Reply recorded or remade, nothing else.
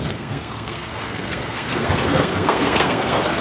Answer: remade